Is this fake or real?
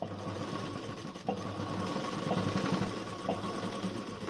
real